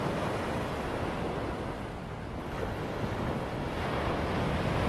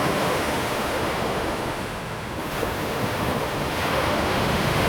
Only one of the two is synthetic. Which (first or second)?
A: second